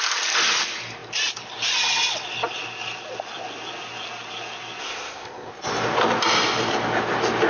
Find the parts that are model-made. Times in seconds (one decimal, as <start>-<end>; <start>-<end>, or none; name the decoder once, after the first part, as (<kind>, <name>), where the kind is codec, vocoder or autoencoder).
4.8-5.5 (codec, ZipCodec)